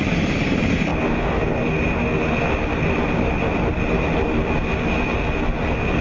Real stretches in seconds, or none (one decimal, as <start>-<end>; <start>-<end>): 0.0-6.0